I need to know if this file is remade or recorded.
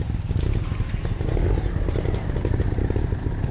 recorded